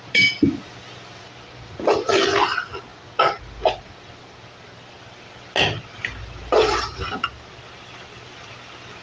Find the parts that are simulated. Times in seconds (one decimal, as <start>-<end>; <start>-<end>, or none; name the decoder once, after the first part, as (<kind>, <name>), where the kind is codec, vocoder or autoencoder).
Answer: none